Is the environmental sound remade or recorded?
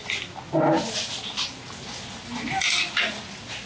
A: recorded